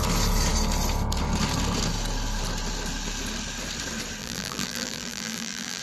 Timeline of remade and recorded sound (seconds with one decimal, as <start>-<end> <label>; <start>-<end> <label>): 0.0-4.2 recorded; 4.2-5.8 remade